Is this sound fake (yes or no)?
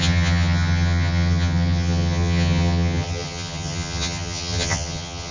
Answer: yes